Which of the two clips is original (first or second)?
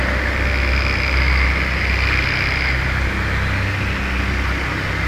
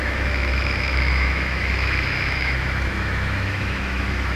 first